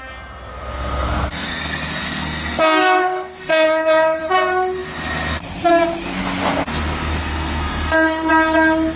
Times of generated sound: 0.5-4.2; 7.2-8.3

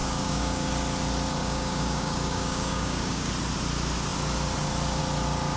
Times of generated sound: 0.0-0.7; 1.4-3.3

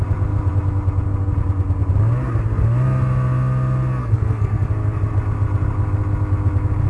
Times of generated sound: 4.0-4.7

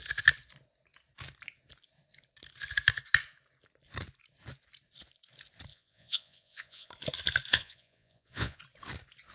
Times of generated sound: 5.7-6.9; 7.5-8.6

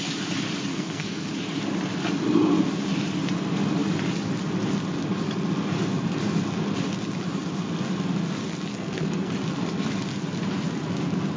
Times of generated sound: 0.7-1.3; 8.7-9.3